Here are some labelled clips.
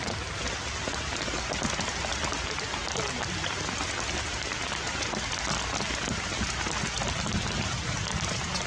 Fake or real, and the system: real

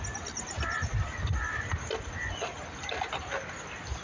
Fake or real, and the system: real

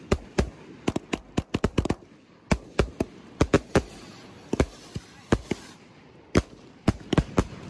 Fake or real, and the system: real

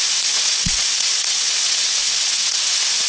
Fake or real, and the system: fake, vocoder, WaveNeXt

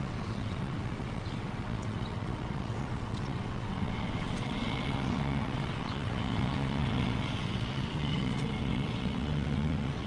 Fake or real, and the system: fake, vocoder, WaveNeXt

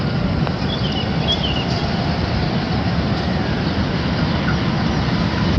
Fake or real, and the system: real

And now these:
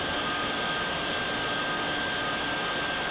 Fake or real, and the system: real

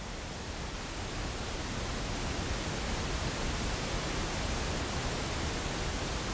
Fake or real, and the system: real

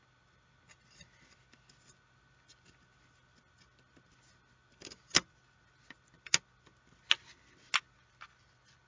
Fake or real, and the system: real